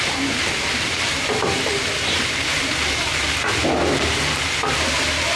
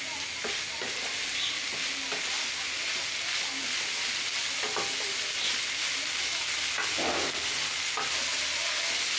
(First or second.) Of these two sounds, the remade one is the first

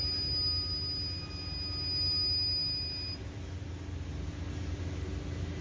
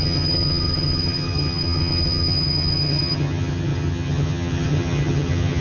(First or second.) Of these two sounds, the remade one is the second